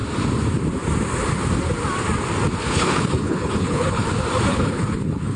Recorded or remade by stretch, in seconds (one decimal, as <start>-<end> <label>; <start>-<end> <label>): 0.0-2.6 recorded; 2.6-4.0 remade; 4.0-4.5 recorded; 4.5-5.4 remade